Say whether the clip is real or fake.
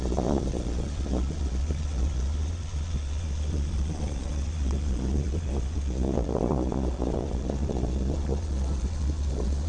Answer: fake